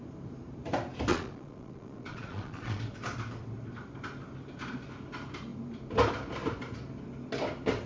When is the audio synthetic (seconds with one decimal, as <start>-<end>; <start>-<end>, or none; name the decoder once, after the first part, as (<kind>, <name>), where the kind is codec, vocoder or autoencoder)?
1.1-2.8 (vocoder, Vocos)